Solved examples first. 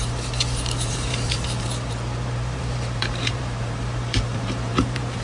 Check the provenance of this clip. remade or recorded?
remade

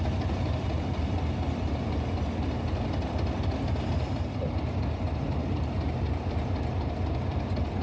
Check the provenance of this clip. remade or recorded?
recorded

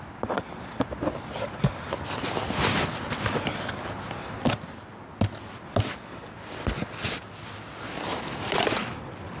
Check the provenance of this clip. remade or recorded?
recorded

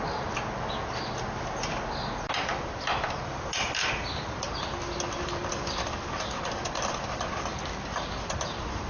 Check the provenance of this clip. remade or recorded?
recorded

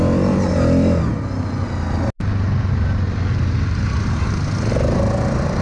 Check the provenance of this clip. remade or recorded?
recorded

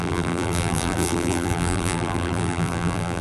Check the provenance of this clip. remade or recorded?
remade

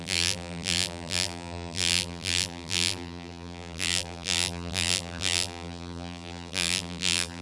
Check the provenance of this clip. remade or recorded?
remade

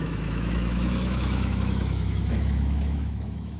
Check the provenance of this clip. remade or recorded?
remade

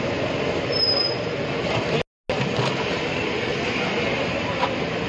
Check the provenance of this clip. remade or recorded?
recorded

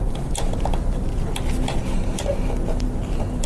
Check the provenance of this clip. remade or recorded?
recorded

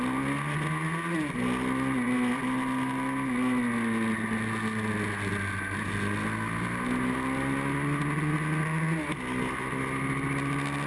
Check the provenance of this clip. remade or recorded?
recorded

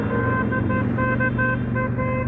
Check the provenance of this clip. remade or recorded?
recorded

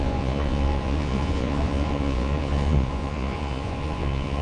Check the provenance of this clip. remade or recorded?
remade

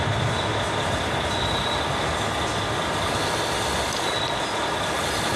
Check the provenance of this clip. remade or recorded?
recorded